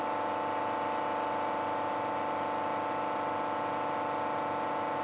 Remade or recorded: recorded